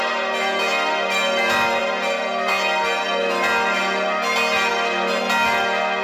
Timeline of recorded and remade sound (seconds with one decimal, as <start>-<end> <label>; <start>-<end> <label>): 0.0-6.0 recorded